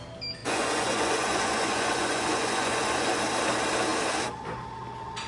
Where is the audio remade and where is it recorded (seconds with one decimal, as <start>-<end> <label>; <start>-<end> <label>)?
0.0-0.4 recorded; 0.4-3.2 remade; 3.2-5.3 recorded